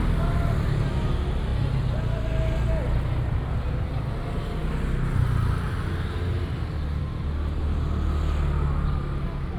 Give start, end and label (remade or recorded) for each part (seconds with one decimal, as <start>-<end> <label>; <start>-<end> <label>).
0.0-9.6 recorded